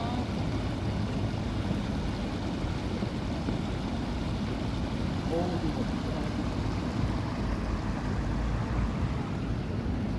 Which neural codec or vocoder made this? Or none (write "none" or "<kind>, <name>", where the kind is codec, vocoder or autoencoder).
none